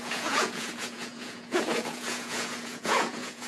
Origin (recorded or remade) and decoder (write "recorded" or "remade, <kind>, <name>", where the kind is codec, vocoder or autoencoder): remade, vocoder, Vocos